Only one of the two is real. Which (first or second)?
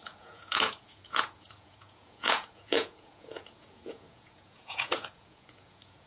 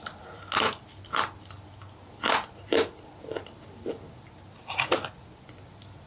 second